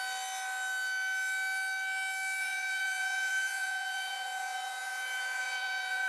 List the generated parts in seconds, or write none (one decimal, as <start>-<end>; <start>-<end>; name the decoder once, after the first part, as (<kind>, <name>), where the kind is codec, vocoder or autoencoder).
2.4-6.1 (vocoder, Vocos)